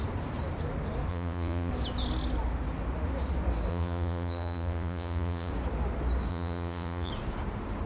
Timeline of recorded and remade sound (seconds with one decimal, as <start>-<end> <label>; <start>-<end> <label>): 0.0-1.1 recorded; 1.1-1.7 remade; 1.7-3.7 recorded; 3.7-5.5 remade; 5.5-6.3 recorded; 6.3-7.1 remade; 7.1-7.9 recorded

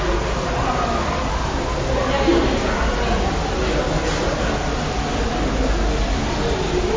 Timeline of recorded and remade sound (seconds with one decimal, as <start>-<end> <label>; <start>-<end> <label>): 0.0-7.0 recorded

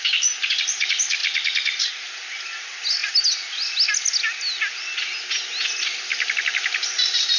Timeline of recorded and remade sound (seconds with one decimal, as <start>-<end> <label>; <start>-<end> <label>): 0.0-7.4 recorded

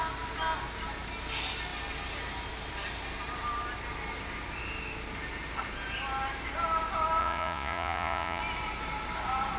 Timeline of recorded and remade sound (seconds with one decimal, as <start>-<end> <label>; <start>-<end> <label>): 0.0-7.2 recorded; 7.2-8.4 remade; 8.4-9.6 recorded